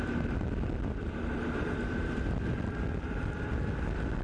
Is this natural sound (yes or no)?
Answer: yes